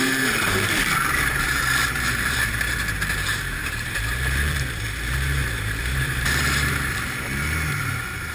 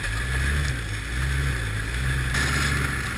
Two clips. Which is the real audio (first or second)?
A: second